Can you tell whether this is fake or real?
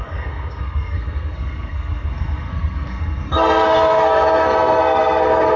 fake